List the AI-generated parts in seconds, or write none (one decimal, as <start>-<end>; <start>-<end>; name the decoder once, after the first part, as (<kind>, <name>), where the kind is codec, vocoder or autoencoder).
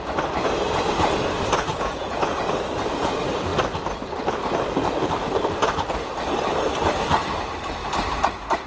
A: 1.7-2.5 (vocoder, Vocos)